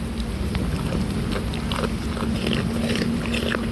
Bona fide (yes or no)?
yes